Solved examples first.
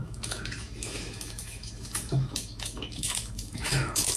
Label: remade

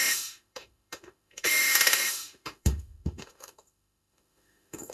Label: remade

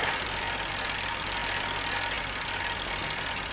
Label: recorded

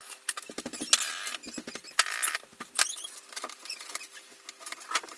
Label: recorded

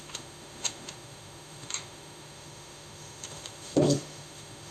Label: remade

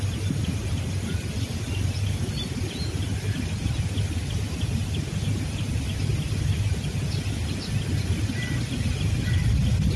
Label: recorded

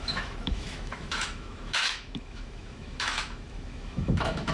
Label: remade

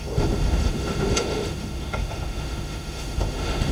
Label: remade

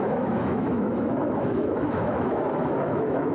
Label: remade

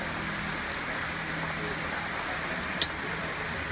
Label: recorded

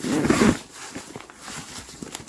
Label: recorded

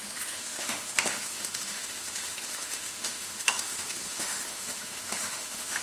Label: remade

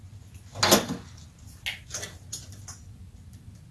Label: recorded